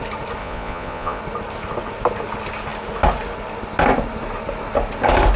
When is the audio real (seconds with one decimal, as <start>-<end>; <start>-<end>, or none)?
0.0-0.4; 1.2-5.4